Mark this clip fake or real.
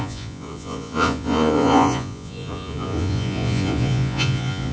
fake